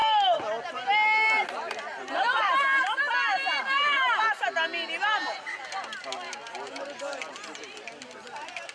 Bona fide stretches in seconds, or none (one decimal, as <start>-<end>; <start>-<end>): 0.0-8.7